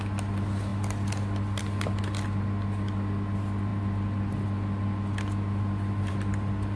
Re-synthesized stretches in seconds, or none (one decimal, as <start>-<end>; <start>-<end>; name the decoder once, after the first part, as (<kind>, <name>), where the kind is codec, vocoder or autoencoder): none